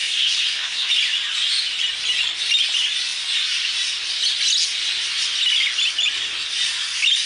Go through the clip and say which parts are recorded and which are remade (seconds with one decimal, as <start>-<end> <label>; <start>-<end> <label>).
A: 0.0-0.9 remade; 0.9-7.3 recorded

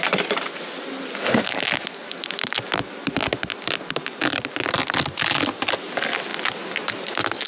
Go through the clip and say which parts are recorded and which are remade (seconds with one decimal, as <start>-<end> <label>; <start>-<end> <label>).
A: 0.0-7.5 recorded

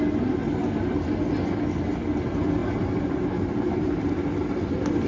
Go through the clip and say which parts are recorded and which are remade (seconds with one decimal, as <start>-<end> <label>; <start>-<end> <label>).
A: 0.0-2.6 recorded; 2.6-4.1 remade; 4.1-5.1 recorded

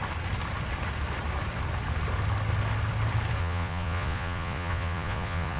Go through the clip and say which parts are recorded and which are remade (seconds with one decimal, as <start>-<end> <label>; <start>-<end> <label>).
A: 0.0-3.4 recorded; 3.4-5.6 remade

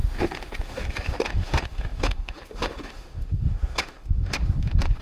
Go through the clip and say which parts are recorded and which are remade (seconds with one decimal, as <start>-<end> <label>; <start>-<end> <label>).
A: 0.0-5.0 remade

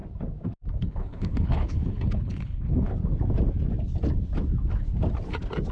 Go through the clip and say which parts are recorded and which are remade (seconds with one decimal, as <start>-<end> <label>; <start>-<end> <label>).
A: 0.0-0.7 recorded; 0.7-2.9 remade; 2.9-5.7 recorded